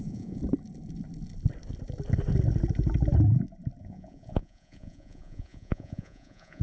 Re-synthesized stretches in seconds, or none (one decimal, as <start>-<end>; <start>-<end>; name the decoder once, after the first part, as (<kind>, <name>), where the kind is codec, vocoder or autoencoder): 0.0-0.4 (vocoder, Vocos); 3.8-6.6

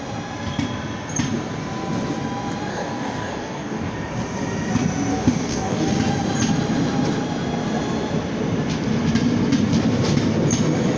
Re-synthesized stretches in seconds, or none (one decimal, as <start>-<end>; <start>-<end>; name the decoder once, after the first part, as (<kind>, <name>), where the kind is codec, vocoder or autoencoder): 2.7-3.9 (codec, DAC); 5.1-5.9

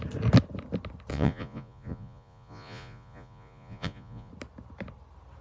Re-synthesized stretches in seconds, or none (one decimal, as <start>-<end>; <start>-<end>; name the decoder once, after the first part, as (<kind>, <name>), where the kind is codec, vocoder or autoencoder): 1.1-4.3 (vocoder, Vocos)

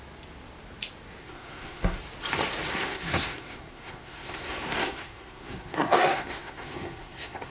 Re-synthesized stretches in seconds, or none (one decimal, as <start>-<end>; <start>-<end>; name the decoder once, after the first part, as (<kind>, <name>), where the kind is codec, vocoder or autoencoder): 1.2-2.0 (codec, SNAC); 2.7-7.5

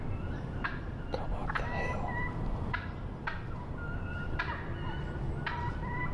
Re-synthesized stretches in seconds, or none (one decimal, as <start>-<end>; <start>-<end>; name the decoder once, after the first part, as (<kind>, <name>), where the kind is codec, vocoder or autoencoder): none

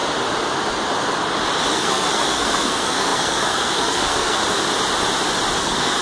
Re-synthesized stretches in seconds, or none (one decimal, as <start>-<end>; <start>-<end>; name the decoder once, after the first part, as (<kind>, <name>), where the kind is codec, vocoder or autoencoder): 1.7-4.4 (codec, SNAC); 5.6-6.0

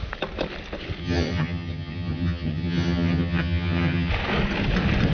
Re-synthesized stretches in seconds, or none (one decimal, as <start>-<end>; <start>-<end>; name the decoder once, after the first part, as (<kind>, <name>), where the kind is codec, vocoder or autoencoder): 1.0-4.1 (vocoder, HiFi-GAN)

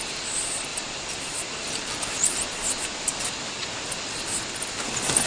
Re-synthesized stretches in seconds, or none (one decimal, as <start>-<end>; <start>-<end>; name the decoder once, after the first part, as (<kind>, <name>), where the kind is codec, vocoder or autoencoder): 0.7-3.9 (vocoder, BigVGAN v2)